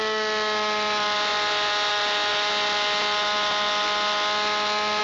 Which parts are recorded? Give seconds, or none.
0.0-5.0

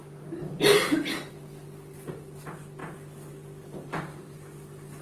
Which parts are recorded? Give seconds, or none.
0.0-5.0

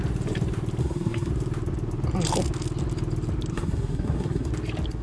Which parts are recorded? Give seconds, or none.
0.0-0.8; 1.3-3.5; 4.5-5.0

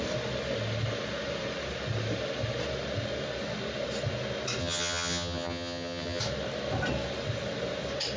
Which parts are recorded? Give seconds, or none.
0.0-4.6; 6.2-8.2

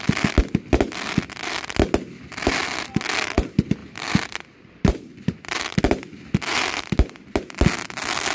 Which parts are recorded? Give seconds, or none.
0.0-3.8; 5.6-8.3